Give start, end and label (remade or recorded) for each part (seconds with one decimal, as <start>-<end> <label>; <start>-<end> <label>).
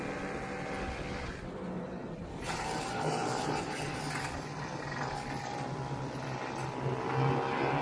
0.0-2.0 recorded; 2.0-4.0 remade; 4.0-7.8 recorded